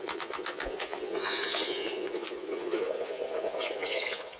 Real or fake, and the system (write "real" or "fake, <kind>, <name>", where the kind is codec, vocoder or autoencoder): fake, vocoder, Vocos